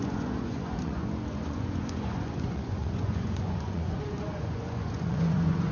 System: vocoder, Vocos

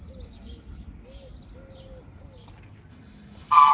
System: none